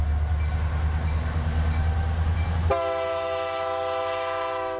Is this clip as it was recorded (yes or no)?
yes